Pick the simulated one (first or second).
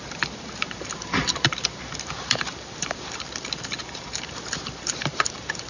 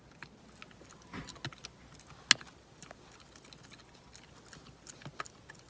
first